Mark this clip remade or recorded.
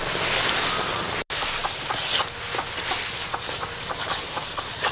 recorded